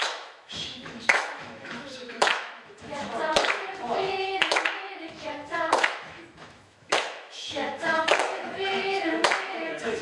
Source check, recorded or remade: remade